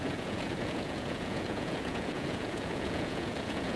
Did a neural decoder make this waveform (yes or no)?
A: yes